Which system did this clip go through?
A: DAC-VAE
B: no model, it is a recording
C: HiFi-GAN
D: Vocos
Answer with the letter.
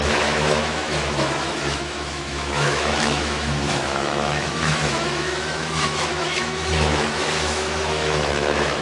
A